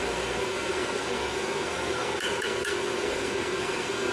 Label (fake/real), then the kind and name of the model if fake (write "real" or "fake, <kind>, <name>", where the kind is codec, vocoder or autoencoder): fake, codec, SNAC